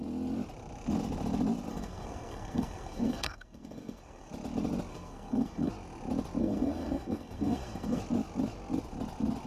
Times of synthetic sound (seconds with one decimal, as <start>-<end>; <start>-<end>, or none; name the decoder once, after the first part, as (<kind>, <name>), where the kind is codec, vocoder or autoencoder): 1.7-4.3 (codec, SNAC); 4.9-5.7; 6.4-8.0